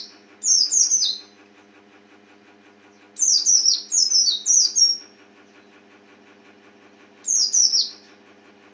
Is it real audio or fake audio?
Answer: real